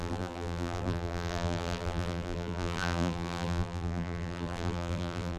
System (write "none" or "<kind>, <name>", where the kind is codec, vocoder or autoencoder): vocoder, BigVGAN v2